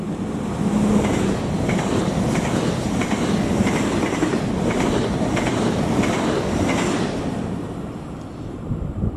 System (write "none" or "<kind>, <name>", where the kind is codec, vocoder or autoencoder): none